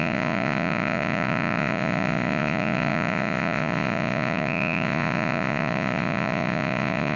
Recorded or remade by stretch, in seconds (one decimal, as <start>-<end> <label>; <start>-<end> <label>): 0.0-7.2 remade